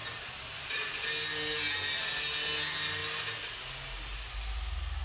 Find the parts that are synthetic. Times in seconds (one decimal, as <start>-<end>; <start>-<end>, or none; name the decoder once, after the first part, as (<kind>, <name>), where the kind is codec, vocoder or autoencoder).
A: 0.0-1.1 (vocoder, BigVGAN v2)

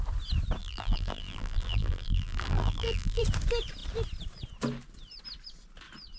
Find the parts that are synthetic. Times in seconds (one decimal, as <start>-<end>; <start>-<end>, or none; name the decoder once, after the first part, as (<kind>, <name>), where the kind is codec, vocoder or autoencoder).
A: 0.6-3.2 (vocoder, BigVGAN v2)

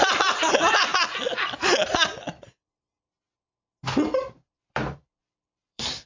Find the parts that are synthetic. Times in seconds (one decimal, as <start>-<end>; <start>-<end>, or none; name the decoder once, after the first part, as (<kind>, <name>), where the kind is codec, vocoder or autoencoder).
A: 0.0-0.9 (vocoder, BigVGAN v2); 4.5-6.1

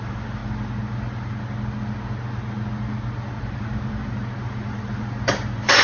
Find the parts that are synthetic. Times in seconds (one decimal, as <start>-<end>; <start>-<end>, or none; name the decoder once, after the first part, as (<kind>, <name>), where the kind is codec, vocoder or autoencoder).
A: 0.0-0.4 (vocoder, BigVGAN v2); 3.4-5.8

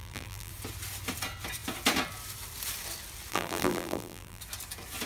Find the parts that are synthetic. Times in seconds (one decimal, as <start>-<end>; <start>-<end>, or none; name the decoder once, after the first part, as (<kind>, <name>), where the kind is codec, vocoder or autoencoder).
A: 0.0-0.5 (vocoder, BigVGAN v2); 3.3-4.4

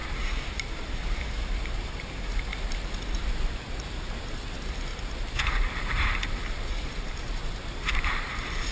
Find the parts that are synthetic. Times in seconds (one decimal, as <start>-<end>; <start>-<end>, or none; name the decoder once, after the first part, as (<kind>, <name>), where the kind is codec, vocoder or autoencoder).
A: 0.0-2.5 (vocoder, BigVGAN v2); 3.5-8.7